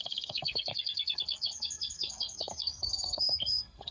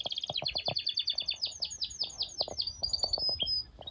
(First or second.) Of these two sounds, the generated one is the first